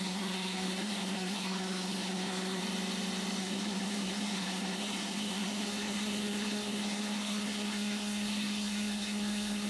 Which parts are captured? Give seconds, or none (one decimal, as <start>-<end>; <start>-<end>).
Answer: 2.6-3.4

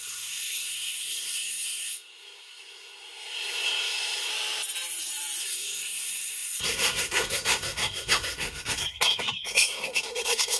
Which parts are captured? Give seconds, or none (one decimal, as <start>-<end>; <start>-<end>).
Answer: 4.3-5.4

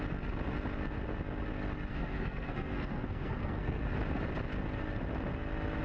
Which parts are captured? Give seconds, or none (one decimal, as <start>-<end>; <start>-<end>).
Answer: 0.0-1.9; 3.8-5.8

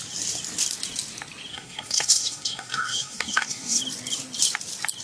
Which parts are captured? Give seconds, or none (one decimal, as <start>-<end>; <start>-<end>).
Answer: 0.0-1.5; 3.8-5.0

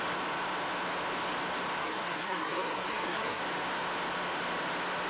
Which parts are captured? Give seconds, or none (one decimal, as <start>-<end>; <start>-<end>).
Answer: 0.0-1.8; 3.4-5.1

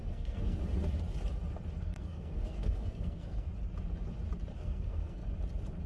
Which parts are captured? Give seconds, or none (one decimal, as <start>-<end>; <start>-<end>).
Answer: 0.6-1.8; 3.5-4.6; 5.2-5.9

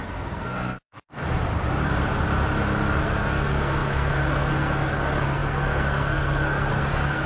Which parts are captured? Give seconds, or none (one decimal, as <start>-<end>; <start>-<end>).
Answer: 1.2-3.0